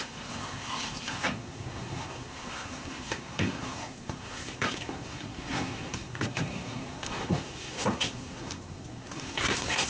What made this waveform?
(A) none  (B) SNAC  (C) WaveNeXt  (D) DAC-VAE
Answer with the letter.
B